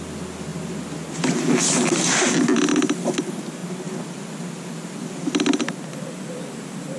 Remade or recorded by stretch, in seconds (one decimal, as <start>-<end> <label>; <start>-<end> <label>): 0.0-7.0 recorded